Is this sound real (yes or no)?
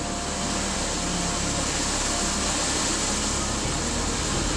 yes